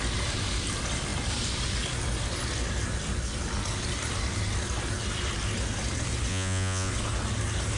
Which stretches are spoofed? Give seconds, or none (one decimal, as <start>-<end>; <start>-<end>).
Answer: 6.3-6.9